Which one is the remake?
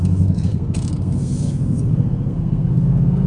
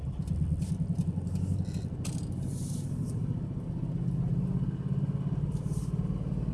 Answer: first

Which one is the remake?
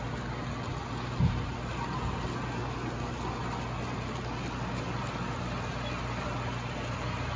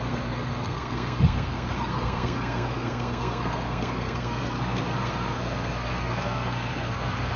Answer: second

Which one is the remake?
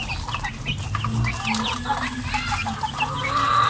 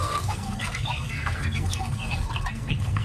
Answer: second